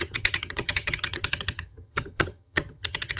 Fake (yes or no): yes